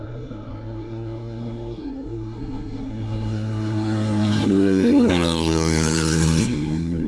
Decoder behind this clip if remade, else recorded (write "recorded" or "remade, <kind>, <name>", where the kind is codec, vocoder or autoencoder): remade, codec, SNAC